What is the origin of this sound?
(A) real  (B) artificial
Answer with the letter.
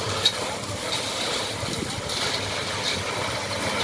A